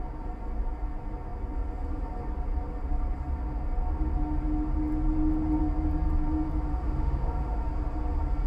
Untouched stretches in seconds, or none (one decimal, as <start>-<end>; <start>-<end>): 0.0-6.7; 7.6-8.5